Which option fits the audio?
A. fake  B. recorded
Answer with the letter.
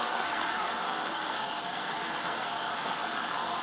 A